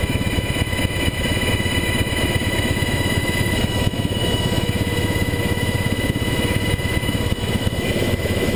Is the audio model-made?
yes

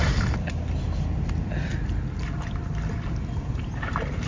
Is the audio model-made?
no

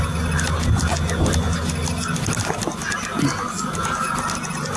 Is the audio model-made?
no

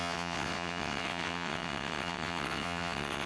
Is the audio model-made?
yes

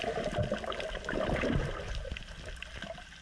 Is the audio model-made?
no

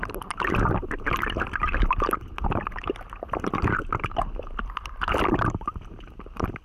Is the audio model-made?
no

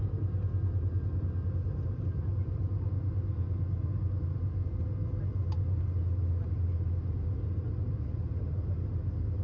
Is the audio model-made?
no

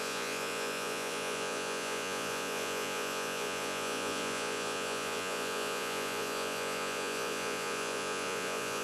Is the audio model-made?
yes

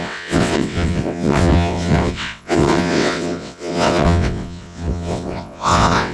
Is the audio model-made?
yes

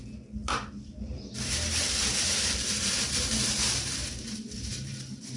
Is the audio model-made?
yes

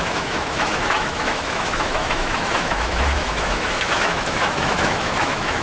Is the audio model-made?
yes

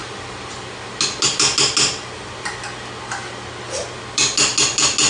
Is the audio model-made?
no